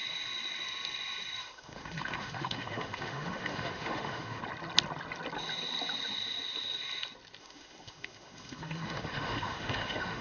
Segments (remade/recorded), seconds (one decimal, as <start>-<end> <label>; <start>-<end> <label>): 0.0-1.4 recorded; 1.4-4.4 remade; 4.4-7.4 recorded; 7.4-10.2 remade